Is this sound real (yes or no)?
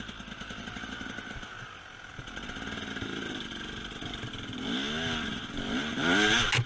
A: yes